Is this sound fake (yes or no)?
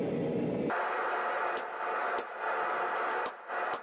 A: no